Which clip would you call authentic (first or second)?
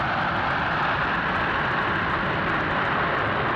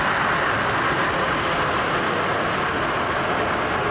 second